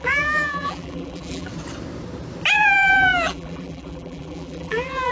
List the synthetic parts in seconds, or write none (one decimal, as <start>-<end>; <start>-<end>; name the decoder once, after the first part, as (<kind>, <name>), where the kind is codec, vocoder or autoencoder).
0.0-1.5 (vocoder, BigVGAN v2); 2.5-5.1